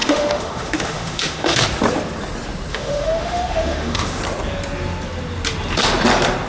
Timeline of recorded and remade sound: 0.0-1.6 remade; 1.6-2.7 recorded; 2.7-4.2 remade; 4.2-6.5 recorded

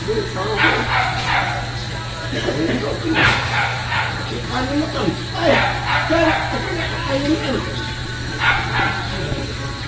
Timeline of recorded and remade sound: 0.0-3.2 recorded; 3.2-4.1 remade; 4.1-9.9 recorded

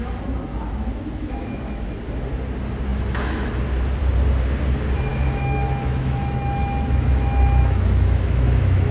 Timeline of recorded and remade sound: 0.0-0.5 recorded; 0.5-1.8 remade; 1.8-2.9 recorded; 2.9-3.5 remade; 3.5-5.1 recorded; 5.1-8.9 remade

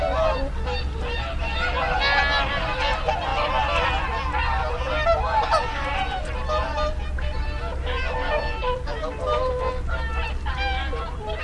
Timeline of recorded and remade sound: 0.0-11.4 recorded

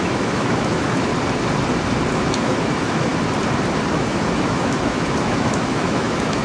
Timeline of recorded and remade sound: 0.0-1.1 remade; 1.1-2.1 recorded; 2.1-3.1 remade; 3.1-3.9 recorded; 3.9-6.4 remade

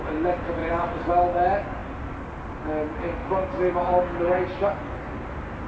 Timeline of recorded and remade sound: 0.0-5.7 recorded

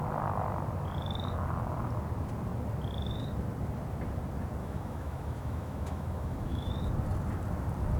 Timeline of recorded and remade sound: 0.0-4.6 recorded; 4.6-6.7 remade; 6.7-8.0 recorded

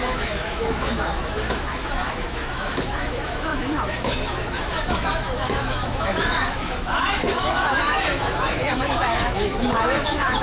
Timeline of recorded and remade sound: 0.0-10.4 remade